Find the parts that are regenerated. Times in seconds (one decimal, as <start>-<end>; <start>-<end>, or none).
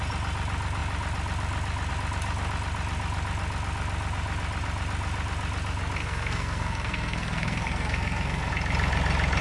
6.0-8.5